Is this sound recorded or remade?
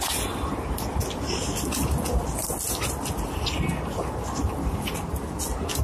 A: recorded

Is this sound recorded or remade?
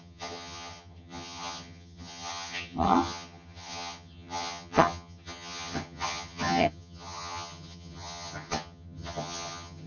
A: remade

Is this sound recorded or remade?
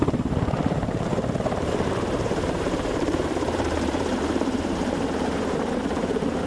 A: remade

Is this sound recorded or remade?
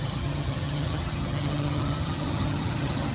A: remade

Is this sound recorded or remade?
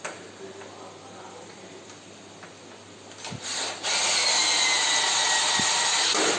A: recorded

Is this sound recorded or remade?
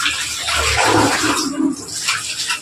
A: recorded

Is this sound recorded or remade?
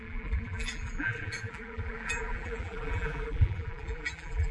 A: remade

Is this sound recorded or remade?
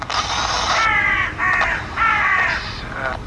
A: recorded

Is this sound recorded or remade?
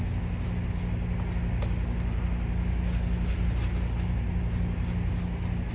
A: recorded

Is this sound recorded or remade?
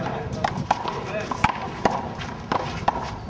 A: remade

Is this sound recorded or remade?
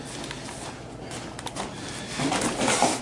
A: recorded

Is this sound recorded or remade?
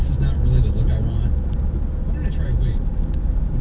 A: recorded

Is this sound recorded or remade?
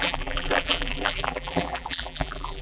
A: remade